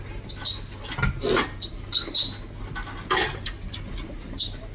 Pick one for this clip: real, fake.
real